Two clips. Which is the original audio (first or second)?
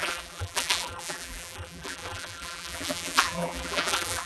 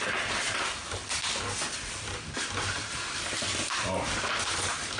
second